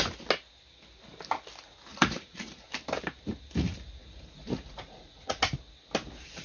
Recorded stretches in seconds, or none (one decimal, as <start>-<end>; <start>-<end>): 0.0-1.9; 2.7-4.0; 5.4-6.4